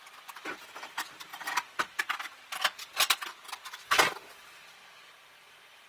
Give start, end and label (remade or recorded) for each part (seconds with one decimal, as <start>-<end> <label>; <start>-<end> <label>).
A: 0.0-5.9 recorded